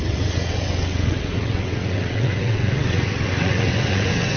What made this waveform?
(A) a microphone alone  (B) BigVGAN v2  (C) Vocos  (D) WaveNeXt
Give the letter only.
D